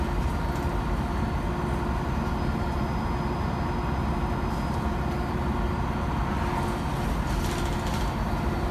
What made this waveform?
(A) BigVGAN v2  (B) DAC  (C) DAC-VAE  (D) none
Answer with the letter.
D